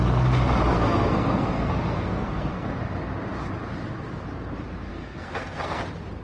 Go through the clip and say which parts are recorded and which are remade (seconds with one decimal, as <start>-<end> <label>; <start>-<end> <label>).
0.0-0.7 recorded; 0.7-2.8 remade; 2.8-4.9 recorded; 4.9-5.8 remade; 5.8-6.2 recorded